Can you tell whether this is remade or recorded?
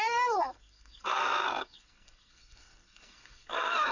remade